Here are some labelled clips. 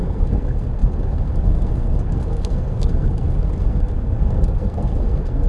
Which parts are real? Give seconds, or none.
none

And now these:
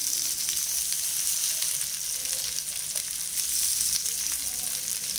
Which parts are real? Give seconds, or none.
0.0-5.2

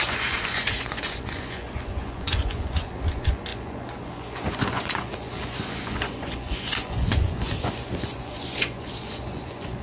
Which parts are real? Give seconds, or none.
none